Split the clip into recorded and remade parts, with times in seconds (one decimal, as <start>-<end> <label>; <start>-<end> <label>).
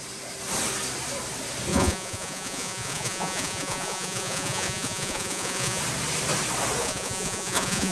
0.0-1.7 recorded; 1.7-5.8 remade; 5.8-6.8 recorded; 6.8-7.9 remade